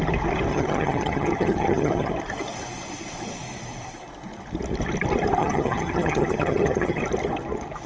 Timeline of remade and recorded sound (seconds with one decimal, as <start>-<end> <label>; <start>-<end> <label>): 0.0-0.5 recorded; 0.5-2.1 remade; 2.1-5.4 recorded; 5.4-7.0 remade; 7.0-7.9 recorded